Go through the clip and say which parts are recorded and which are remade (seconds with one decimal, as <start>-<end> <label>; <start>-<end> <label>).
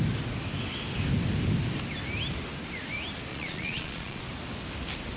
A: 0.0-3.3 recorded; 3.3-4.2 remade; 4.2-5.2 recorded